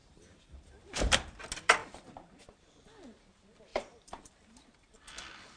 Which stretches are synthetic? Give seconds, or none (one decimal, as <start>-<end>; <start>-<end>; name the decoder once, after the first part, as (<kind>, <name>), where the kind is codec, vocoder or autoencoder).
0.0-1.4 (vocoder, BigVGAN v2); 1.8-2.5; 3.7-4.5